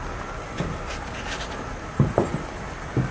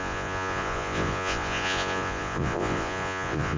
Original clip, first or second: first